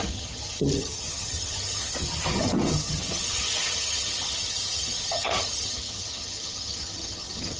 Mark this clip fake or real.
fake